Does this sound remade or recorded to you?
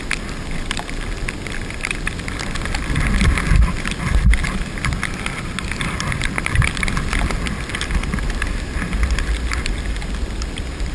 recorded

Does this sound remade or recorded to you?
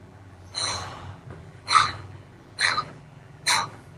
remade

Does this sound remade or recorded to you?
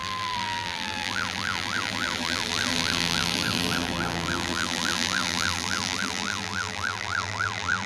remade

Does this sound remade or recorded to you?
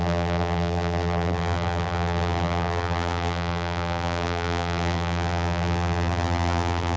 remade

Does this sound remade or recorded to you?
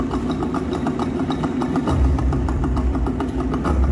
remade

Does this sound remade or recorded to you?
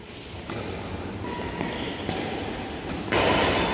recorded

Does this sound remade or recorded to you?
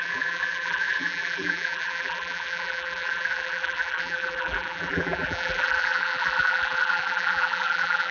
remade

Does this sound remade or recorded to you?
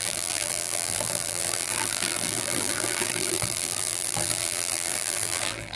remade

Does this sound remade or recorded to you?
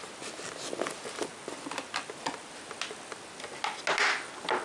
recorded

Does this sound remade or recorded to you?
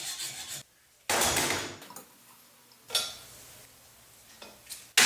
recorded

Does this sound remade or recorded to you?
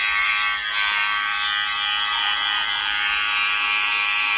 remade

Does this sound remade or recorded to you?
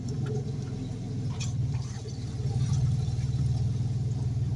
remade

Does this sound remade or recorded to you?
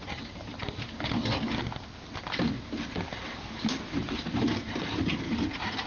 recorded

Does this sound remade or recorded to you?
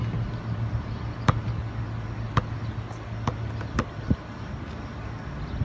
recorded